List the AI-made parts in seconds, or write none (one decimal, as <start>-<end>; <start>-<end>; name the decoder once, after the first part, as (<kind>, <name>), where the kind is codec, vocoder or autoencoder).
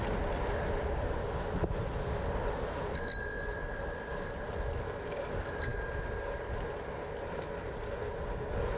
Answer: none